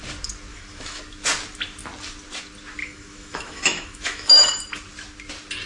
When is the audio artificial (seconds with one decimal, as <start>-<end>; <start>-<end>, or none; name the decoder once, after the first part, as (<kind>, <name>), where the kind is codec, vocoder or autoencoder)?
0.5-1.0 (autoencoder, DAC-VAE); 2.8-4.5